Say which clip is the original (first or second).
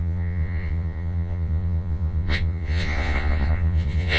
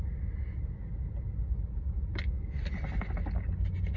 second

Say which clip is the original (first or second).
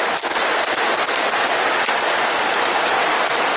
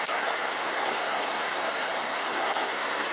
first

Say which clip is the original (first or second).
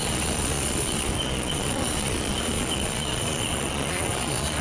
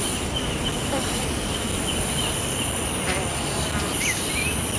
second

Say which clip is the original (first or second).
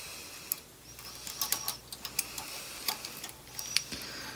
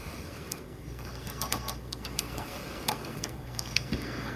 first